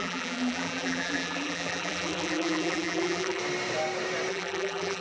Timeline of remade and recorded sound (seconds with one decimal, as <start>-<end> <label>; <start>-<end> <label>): 0.0-3.4 remade; 3.4-4.3 recorded; 4.3-5.0 remade